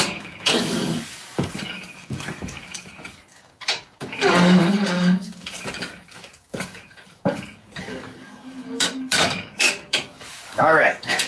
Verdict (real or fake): fake